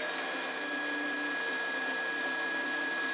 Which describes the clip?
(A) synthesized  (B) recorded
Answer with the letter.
B